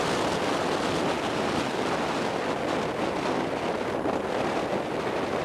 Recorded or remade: recorded